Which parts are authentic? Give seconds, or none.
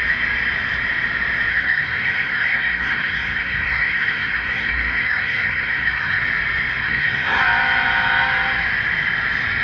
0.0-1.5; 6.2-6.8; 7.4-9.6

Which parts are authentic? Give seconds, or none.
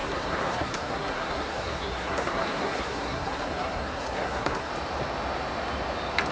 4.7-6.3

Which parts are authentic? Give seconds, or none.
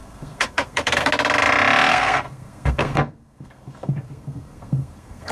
1.1-1.9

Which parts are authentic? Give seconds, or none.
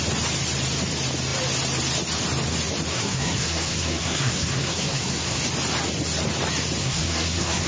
0.0-2.9; 5.4-6.8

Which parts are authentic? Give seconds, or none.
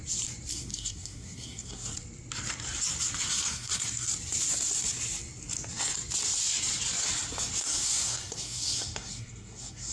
0.0-0.5; 1.9-3.3; 4.1-7.6